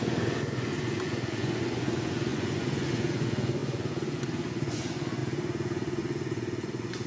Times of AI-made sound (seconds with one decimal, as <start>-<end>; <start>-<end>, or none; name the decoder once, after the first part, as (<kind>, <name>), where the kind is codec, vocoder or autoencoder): 0.0-7.1 (vocoder, Vocos)